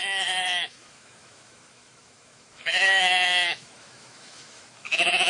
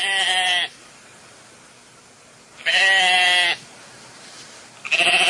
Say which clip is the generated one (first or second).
first